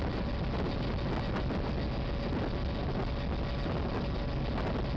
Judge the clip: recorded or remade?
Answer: recorded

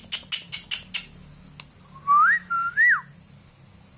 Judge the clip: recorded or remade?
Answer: recorded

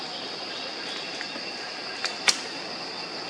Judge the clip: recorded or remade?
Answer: recorded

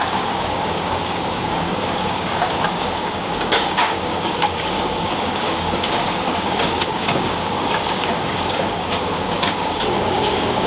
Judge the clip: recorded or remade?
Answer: remade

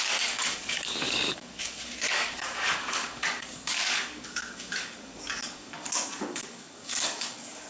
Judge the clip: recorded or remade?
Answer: remade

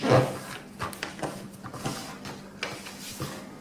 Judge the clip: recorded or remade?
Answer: recorded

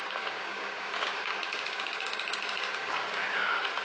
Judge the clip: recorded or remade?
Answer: remade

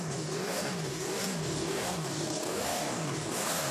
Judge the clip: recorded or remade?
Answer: remade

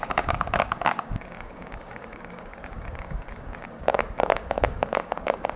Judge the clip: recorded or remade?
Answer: remade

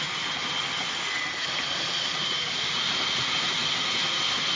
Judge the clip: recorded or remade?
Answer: recorded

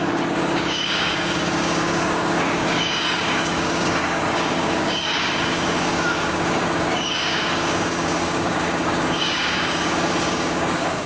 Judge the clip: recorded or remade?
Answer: remade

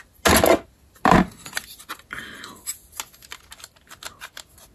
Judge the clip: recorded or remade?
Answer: recorded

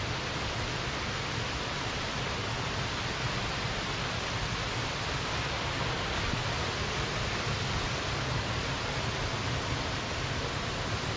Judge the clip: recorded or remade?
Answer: recorded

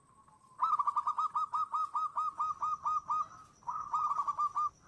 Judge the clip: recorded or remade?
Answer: recorded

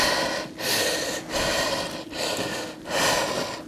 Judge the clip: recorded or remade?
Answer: recorded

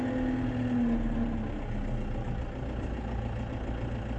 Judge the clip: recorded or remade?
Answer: recorded